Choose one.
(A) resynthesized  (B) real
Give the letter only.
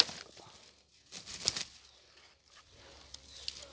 B